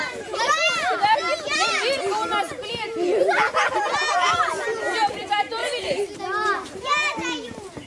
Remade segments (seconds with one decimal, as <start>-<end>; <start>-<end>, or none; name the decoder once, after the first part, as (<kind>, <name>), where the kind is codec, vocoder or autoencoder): none

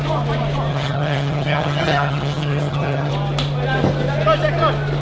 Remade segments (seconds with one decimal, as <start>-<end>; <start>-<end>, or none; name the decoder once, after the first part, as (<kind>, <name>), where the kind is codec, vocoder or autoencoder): 0.7-3.1 (vocoder, HiFi-GAN)

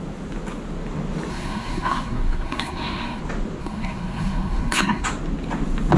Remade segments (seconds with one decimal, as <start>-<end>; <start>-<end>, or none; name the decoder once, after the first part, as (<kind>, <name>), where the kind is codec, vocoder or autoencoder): 1.3-3.2 (codec, SNAC); 3.6-5.1

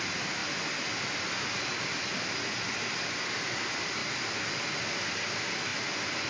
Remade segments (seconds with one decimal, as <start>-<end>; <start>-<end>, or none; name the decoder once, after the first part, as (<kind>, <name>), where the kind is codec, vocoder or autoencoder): none

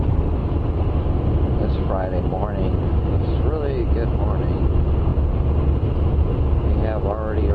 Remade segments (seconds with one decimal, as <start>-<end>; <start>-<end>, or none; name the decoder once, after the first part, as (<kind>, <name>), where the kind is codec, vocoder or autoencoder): none

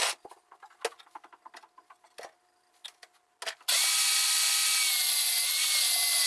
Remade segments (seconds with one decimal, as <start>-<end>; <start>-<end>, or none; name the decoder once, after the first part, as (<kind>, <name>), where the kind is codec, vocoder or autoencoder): none

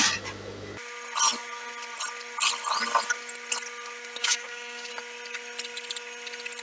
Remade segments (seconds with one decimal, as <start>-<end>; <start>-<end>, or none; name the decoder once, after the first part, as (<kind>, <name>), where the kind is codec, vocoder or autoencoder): 4.2-4.9 (codec, DAC)

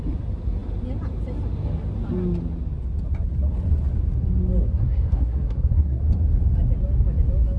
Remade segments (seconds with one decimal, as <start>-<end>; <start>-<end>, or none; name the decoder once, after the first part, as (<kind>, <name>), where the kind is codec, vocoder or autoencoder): 4.6-6.0 (codec, SNAC)